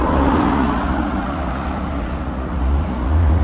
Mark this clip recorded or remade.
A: remade